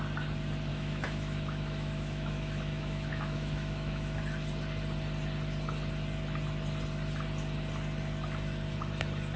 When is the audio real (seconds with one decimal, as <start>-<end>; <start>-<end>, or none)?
0.0-0.7; 4.2-9.4